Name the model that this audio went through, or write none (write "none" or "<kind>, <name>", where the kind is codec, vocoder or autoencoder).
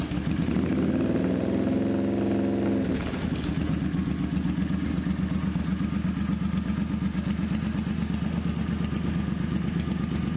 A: none